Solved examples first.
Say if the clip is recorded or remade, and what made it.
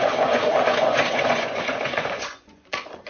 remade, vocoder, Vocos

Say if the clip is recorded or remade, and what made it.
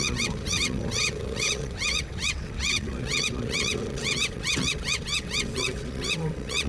remade, vocoder, WaveNeXt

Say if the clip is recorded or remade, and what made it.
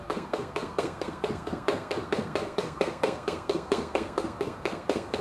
remade, codec, SNAC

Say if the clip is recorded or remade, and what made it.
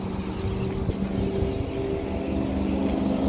recorded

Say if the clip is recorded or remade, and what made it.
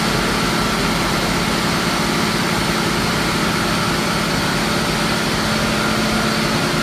recorded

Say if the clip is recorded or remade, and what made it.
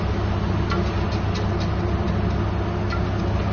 recorded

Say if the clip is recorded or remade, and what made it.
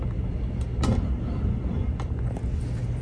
recorded